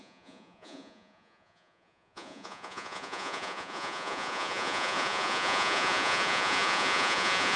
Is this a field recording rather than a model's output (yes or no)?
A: no